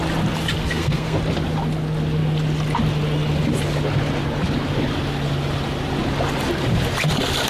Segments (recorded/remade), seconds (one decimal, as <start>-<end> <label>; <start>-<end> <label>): 0.0-0.6 recorded; 0.6-1.2 remade; 1.2-7.5 recorded